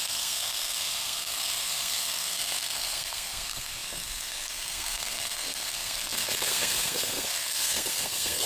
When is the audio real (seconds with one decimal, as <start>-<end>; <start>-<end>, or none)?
none